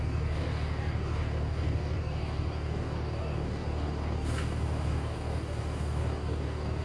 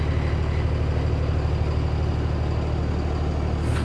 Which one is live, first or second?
second